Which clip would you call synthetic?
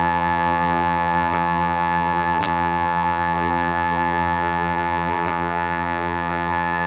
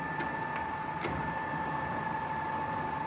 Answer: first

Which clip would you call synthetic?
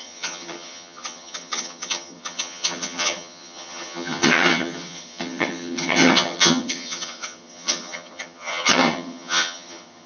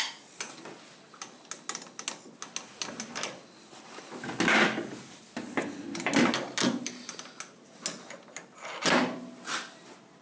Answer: first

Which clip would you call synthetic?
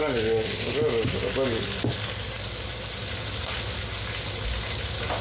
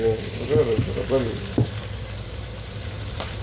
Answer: second